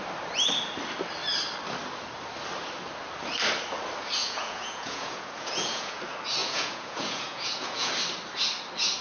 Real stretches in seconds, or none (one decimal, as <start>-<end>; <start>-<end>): 0.0-4.2; 6.0-6.4; 7.9-9.0